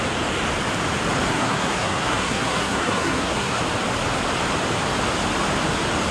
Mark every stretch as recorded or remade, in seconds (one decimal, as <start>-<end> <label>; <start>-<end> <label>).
0.0-1.3 recorded; 1.3-3.6 remade; 3.6-6.1 recorded